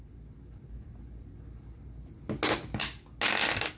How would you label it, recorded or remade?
recorded